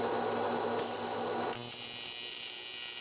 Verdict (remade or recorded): recorded